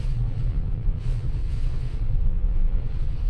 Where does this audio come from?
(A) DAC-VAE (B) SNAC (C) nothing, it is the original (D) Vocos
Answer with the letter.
D